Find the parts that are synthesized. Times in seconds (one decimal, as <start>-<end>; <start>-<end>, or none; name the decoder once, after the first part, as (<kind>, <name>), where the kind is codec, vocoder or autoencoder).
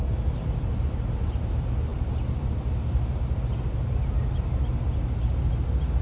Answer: none